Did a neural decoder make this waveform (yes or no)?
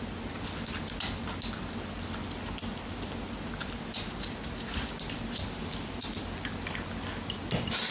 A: no